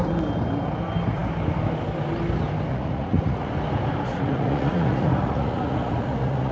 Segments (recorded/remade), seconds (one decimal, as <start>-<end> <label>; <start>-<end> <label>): 0.0-2.7 recorded; 2.7-3.5 remade; 3.5-4.1 recorded; 4.1-6.5 remade